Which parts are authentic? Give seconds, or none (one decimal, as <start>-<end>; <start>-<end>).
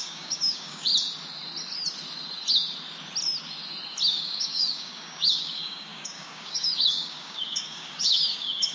0.9-4.1